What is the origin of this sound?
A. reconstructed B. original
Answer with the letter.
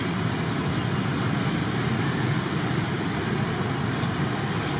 B